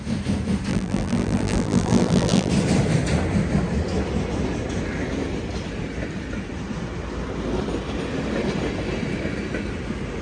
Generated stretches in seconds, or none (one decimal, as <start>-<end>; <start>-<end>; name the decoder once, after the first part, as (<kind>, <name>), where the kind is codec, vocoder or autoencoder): 0.7-2.5 (vocoder, BigVGAN v2)